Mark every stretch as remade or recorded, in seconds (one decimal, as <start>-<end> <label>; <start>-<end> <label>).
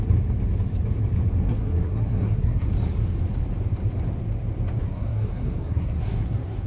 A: 0.0-1.4 recorded; 1.4-2.7 remade; 2.7-4.8 recorded; 4.8-6.7 remade